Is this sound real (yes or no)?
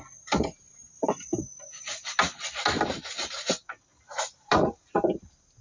yes